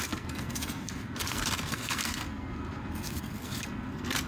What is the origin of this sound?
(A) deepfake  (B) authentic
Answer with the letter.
A